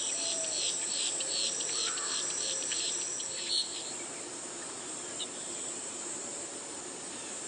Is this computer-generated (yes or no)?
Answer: yes